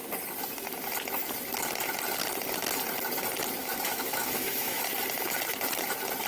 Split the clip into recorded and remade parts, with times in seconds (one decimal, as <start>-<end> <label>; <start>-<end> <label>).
0.0-3.6 recorded; 3.6-4.8 remade; 4.8-6.3 recorded